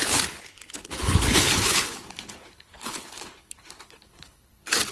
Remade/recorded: remade